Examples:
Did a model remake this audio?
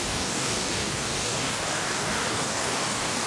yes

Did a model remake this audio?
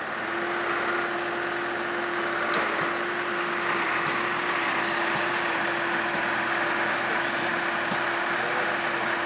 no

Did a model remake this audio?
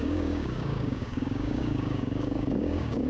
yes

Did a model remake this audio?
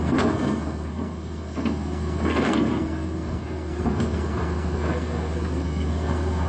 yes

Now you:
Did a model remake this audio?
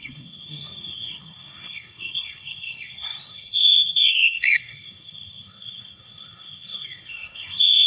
yes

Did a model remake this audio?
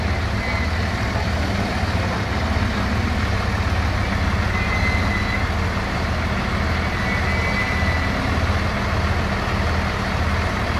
no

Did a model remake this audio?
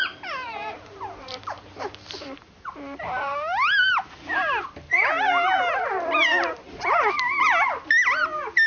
yes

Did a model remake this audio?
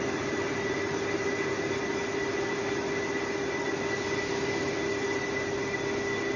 no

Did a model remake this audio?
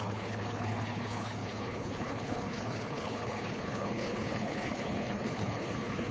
yes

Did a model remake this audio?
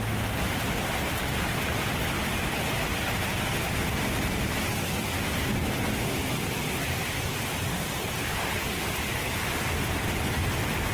no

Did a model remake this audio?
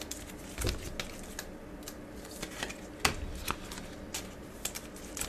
no